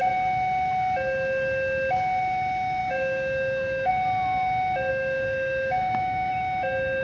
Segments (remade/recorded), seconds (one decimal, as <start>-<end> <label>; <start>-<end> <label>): 0.0-2.8 recorded; 2.8-3.9 remade; 3.9-4.9 recorded; 4.9-6.3 remade; 6.3-7.0 recorded